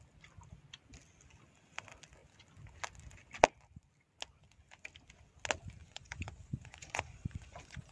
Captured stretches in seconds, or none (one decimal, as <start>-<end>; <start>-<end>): 0.0-5.8